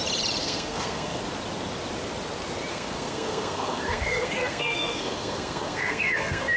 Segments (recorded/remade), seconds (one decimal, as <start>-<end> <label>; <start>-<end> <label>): 0.0-0.4 recorded; 0.4-1.2 remade; 1.2-2.7 recorded; 2.7-6.6 remade